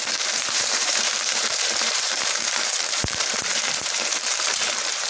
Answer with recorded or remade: remade